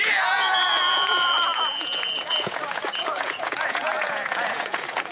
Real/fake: fake